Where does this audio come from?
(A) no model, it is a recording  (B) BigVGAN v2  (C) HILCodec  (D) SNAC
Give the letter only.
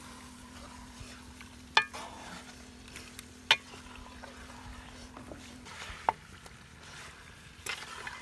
A